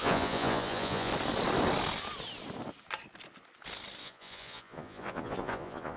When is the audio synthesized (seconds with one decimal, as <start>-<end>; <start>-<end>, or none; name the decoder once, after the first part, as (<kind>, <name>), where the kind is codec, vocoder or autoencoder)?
0.0-1.1 (vocoder, Vocos); 4.0-6.0